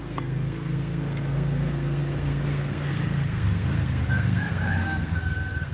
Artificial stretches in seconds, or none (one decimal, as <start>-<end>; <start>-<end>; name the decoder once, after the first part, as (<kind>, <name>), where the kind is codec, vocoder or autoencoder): 0.0-5.7 (codec, SNAC)